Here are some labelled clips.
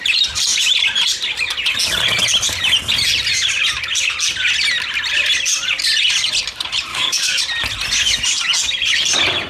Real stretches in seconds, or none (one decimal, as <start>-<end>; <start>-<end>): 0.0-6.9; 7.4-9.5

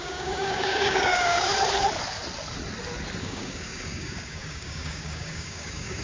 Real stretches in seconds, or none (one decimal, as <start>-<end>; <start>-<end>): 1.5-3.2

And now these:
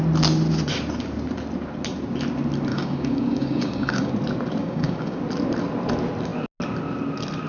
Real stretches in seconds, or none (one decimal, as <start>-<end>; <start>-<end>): 0.0-2.7; 4.1-4.6; 5.2-7.5